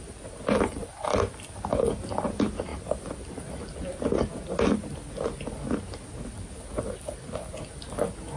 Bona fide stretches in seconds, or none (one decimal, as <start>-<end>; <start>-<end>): 0.0-8.4